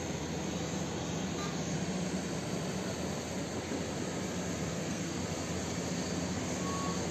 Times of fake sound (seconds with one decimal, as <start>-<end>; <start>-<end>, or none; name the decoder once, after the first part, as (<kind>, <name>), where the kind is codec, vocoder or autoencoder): 4.7-5.2 (codec, SNAC)